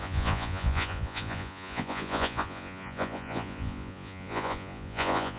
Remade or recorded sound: remade